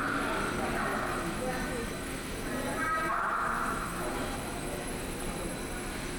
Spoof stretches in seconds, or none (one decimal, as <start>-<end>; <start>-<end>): 0.9-2.5; 3.1-4.9